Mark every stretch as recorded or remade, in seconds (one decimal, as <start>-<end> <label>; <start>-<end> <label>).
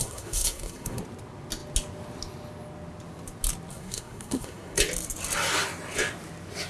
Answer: 0.0-1.0 remade; 1.0-3.7 recorded; 3.7-4.8 remade; 4.8-6.7 recorded